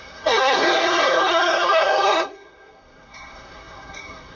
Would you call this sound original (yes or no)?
no